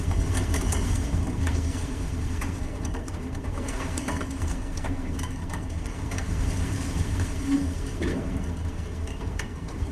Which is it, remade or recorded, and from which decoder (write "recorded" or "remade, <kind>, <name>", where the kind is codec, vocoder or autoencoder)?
remade, codec, SNAC